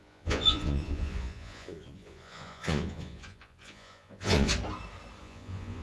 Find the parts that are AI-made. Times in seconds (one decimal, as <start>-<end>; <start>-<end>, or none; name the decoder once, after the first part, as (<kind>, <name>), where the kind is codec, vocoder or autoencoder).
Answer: 0.0-4.5 (vocoder, Vocos); 5.2-5.8